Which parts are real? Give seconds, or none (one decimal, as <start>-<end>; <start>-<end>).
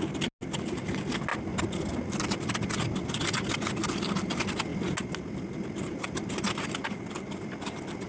0.0-8.1